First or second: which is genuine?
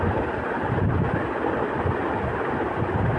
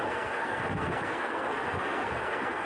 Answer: first